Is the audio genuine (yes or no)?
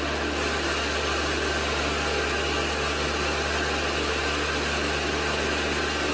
yes